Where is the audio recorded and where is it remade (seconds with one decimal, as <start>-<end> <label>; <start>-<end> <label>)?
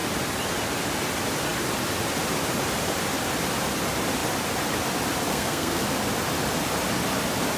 0.0-5.3 recorded; 5.3-5.8 remade; 5.8-7.6 recorded